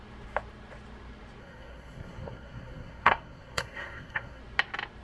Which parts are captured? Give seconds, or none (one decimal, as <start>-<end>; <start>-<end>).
0.0-1.4; 4.4-5.0